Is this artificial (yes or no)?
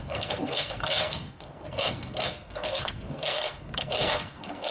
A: yes